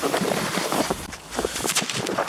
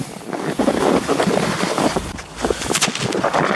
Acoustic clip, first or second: second